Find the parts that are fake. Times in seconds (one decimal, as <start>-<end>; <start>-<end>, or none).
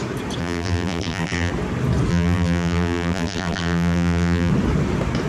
0.4-1.5; 2.1-4.5